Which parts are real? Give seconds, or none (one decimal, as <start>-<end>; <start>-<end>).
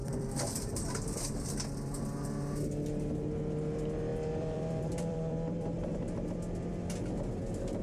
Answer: 1.5-4.1; 6.0-7.8